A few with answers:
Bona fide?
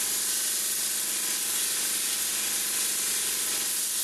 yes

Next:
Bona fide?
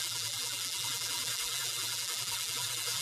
no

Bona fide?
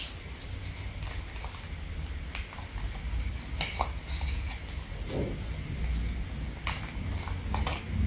yes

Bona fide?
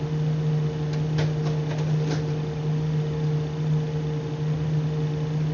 yes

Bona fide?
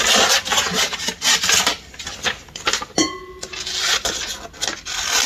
yes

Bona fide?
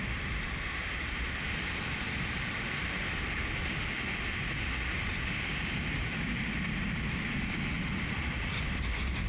no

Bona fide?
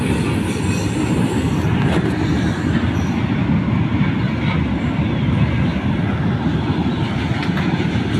yes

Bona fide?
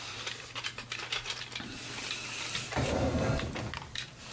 yes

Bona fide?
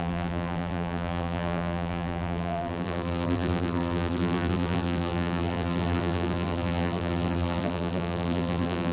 no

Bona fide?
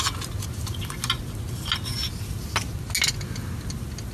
yes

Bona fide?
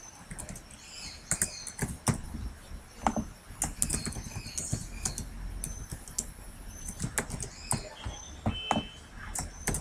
yes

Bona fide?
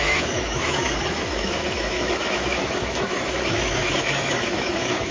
no